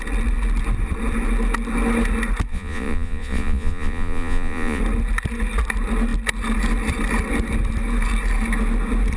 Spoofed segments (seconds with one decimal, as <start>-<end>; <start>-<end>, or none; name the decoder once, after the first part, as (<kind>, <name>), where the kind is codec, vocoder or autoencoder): 2.5-4.8 (vocoder, Vocos)